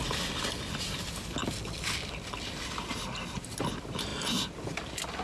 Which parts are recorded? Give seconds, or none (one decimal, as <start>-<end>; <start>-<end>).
0.0-5.2